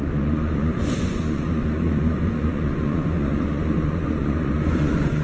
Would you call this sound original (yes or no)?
no